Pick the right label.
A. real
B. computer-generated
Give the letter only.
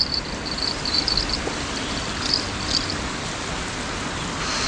A